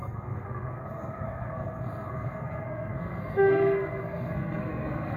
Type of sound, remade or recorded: remade